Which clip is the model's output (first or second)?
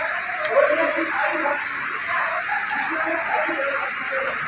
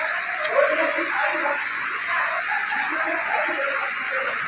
second